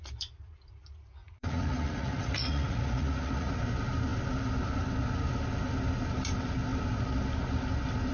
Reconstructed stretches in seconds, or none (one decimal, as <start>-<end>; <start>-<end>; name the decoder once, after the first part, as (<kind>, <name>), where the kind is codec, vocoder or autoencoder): 1.2-3.5 (vocoder, Vocos)